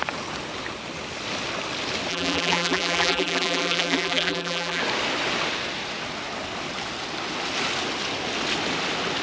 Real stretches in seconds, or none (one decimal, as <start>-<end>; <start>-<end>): 0.0-2.1; 4.8-9.2